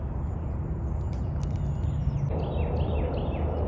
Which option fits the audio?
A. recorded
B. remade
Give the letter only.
A